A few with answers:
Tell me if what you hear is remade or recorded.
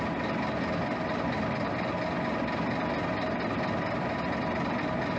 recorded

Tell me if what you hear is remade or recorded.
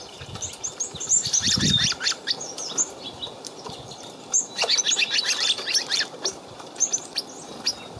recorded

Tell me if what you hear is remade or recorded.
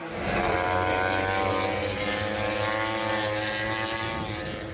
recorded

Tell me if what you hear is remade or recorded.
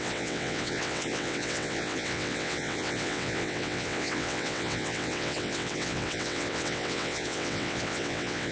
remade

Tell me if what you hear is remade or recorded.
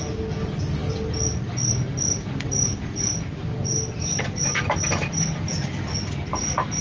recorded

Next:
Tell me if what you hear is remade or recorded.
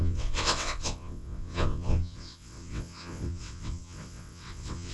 remade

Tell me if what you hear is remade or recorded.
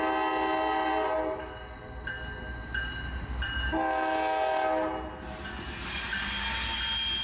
recorded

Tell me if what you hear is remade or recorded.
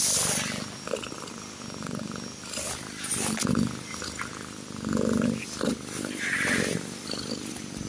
recorded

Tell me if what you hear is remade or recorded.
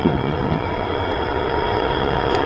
remade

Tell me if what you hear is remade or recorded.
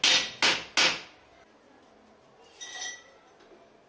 recorded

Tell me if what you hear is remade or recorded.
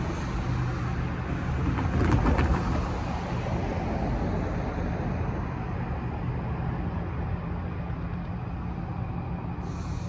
recorded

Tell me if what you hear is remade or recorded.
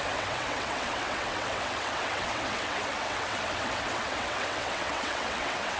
remade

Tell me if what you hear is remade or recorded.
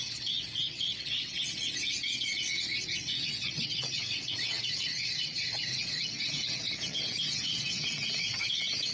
remade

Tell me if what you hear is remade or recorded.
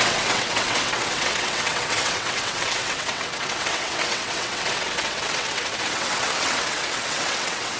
remade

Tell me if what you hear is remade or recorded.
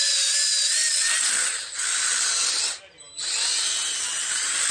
recorded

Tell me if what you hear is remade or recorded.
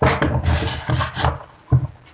recorded